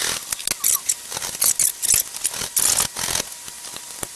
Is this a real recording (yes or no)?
yes